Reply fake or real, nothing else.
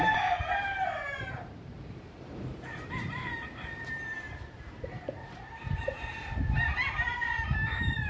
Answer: fake